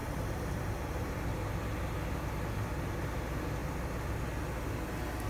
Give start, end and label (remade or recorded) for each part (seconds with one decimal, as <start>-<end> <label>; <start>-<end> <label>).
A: 0.0-1.6 remade; 1.6-5.3 recorded